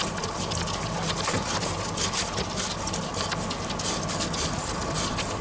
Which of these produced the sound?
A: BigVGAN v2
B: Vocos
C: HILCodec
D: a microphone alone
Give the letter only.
D